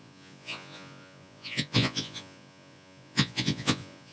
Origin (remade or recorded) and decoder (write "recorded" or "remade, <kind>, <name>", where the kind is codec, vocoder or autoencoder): remade, vocoder, Vocos